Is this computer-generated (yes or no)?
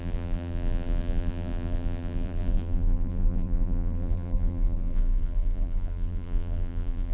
yes